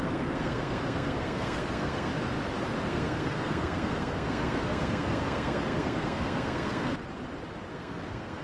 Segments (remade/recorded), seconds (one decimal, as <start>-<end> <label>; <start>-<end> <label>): 0.0-2.1 remade; 2.1-2.8 recorded; 2.8-6.9 remade; 6.9-7.7 recorded; 7.7-8.4 remade

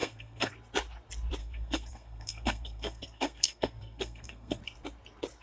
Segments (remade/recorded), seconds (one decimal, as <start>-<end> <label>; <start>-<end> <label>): 0.0-0.5 remade; 0.5-1.4 recorded; 1.4-4.6 remade; 4.6-5.4 recorded